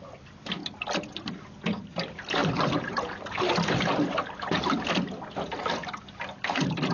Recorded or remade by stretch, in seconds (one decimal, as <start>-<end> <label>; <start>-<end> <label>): 0.0-6.9 recorded